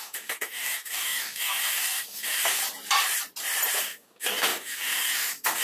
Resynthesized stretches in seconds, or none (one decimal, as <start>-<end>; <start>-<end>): 0.0-2.6; 3.8-5.6